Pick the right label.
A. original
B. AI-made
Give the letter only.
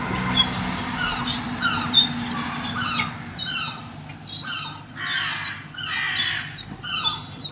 A